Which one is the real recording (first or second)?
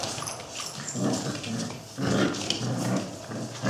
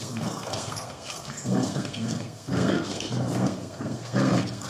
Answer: first